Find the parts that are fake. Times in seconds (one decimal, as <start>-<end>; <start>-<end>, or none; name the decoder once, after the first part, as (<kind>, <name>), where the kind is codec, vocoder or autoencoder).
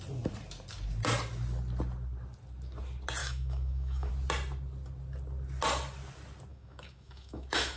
3.2-4.1 (autoencoder, DAC-VAE); 6.5-7.8